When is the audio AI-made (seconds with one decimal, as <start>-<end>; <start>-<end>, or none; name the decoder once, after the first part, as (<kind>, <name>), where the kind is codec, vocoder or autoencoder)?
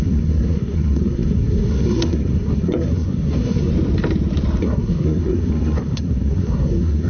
0.0-3.7 (codec, SNAC); 4.6-7.1